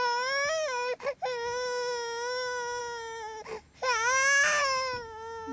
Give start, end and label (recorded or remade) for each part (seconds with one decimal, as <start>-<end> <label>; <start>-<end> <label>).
0.0-5.5 recorded